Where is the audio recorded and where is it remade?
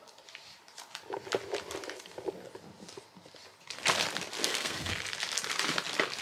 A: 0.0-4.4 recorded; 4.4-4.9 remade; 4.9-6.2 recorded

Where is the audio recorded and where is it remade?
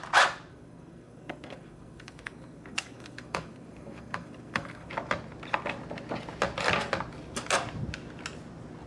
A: 0.0-0.5 recorded; 0.5-4.9 remade; 4.9-8.9 recorded